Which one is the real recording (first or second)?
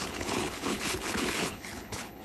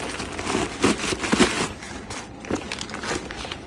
second